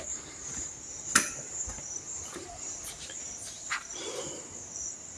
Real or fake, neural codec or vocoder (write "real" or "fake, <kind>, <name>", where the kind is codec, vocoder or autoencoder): fake, vocoder, BigVGAN v2